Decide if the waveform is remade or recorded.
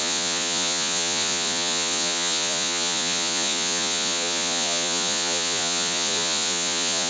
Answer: remade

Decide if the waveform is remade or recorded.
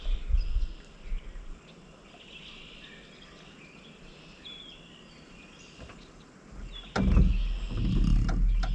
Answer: recorded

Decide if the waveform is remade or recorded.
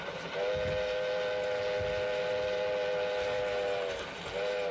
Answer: recorded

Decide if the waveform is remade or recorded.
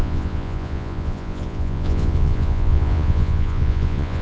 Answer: remade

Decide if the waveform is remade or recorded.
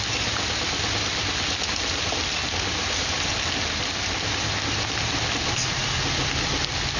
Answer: recorded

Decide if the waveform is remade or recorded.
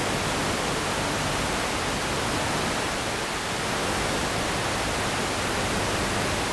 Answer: recorded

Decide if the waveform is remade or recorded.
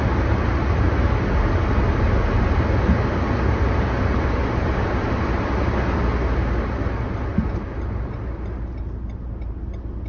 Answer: recorded